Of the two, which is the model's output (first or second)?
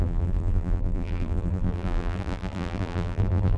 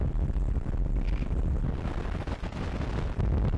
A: first